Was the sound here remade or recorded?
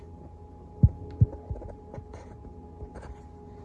recorded